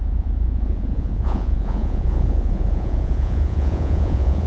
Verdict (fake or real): fake